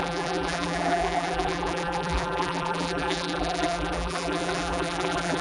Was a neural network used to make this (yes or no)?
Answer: yes